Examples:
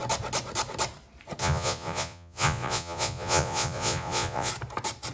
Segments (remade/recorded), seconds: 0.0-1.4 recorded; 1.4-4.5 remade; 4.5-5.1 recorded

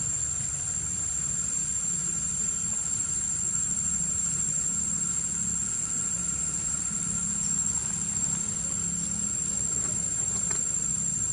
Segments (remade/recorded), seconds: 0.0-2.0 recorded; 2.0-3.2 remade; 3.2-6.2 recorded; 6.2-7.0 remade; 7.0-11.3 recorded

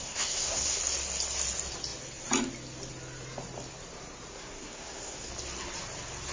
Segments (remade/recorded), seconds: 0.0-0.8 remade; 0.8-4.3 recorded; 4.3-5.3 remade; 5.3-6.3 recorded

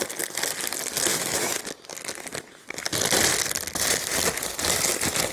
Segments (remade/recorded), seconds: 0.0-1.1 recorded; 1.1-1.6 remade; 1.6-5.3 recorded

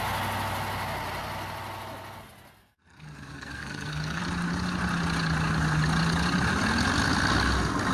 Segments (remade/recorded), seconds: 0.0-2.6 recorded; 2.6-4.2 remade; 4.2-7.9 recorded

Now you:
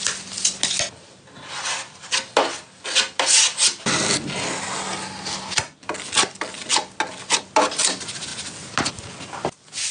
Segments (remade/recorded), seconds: 0.0-9.9 recorded